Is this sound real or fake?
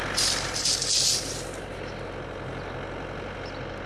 real